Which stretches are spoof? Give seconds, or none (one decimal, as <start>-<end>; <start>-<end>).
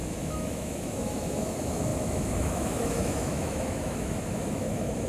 0.0-5.1